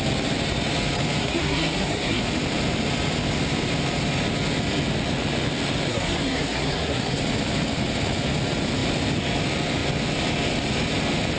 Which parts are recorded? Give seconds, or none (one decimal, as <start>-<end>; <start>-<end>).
0.0-1.2; 2.2-5.9; 7.2-11.4

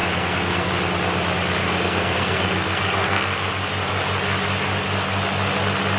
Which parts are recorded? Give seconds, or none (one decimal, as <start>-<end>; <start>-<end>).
0.7-1.6; 3.5-6.0

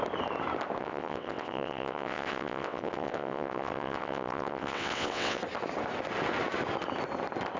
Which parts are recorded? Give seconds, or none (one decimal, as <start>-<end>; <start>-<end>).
0.0-0.8; 5.4-7.6

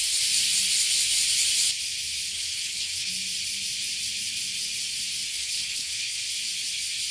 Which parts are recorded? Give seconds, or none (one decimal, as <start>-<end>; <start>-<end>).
0.0-2.3; 3.1-5.3; 6.2-7.1

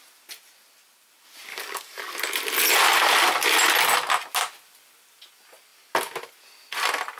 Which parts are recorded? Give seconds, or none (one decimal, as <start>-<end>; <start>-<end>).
0.0-1.5; 2.0-7.2

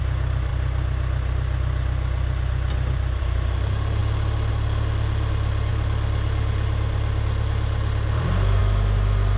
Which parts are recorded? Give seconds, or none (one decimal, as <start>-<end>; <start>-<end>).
0.0-9.4

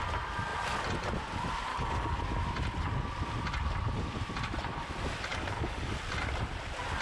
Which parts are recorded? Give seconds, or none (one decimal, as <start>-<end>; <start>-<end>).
0.0-1.7; 2.2-5.3; 6.0-7.0

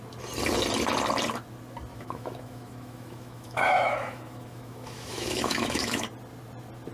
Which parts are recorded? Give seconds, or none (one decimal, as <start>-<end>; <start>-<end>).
0.0-1.9; 6.0-6.9